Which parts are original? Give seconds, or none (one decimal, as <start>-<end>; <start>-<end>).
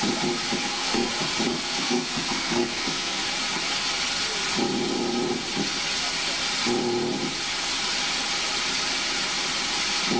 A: 0.0-0.6; 1.1-1.5; 3.2-10.2